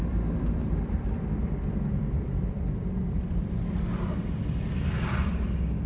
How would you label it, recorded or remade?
remade